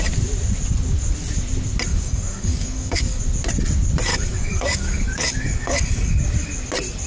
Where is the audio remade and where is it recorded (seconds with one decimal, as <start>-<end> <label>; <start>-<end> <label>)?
0.0-1.9 recorded; 1.9-3.2 remade; 3.2-4.1 recorded; 4.1-6.1 remade; 6.1-7.1 recorded